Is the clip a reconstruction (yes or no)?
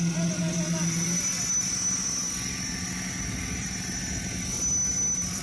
no